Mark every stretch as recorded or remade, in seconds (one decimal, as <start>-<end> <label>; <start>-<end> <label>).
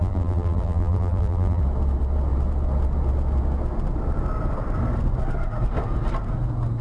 0.0-1.6 remade; 1.6-6.8 recorded